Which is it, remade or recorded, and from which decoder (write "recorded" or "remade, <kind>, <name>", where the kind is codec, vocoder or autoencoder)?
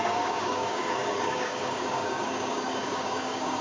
remade, codec, DAC